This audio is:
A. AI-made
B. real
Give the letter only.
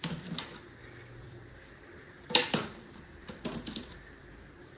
A